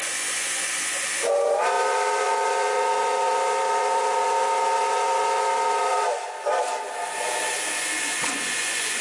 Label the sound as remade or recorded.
remade